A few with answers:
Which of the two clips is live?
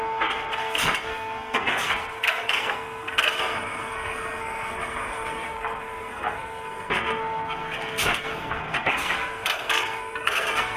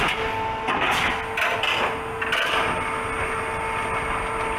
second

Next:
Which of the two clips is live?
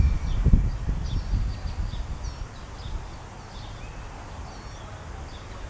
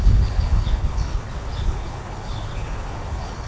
first